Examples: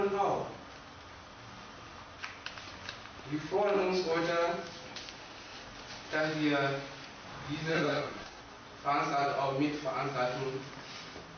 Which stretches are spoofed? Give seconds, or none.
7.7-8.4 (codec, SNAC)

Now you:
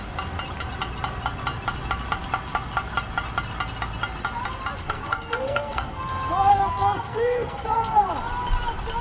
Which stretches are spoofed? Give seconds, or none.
4.8-6.1 (codec, SNAC); 6.5-8.1

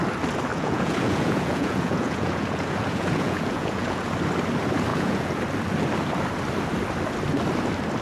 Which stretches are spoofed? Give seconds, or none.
0.5-4.1 (vocoder, Vocos); 4.9-5.4

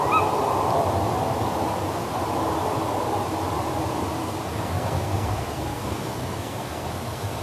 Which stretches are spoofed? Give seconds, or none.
4.2-7.4 (codec, SNAC)